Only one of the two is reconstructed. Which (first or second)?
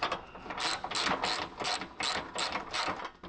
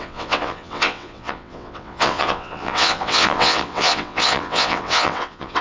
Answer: second